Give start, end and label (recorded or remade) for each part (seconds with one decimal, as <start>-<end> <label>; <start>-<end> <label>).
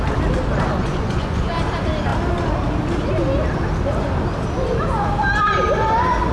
0.0-0.8 recorded; 0.8-1.5 remade; 1.5-6.3 recorded